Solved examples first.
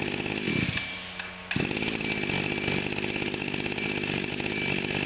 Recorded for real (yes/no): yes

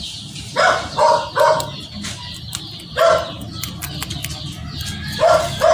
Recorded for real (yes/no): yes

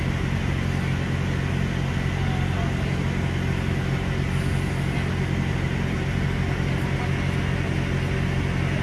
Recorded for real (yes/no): yes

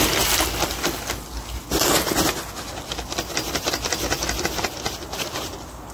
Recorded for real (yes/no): yes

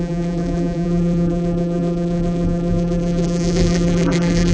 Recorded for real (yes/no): no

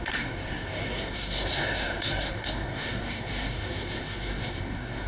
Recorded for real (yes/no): no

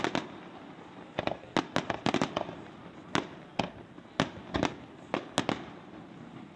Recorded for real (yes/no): yes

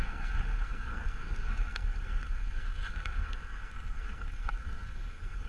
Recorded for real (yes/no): no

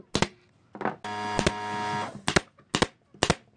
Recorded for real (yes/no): yes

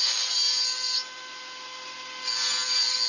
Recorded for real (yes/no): yes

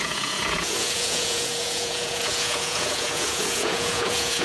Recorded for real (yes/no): no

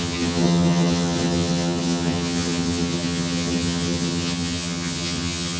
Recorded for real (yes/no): no